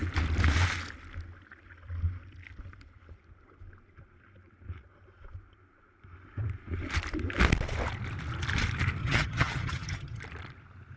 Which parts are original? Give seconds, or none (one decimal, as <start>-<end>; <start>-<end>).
0.0-9.0; 10.2-11.0

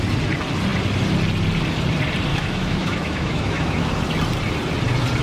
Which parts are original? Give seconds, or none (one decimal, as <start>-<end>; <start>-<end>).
0.0-2.3; 3.9-5.2

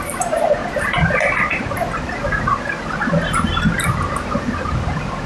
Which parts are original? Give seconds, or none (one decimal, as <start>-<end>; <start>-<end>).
0.0-5.3